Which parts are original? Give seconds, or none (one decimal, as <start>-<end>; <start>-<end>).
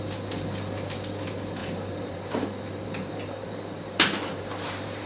0.0-1.6